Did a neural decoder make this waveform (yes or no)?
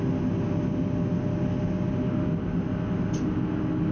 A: no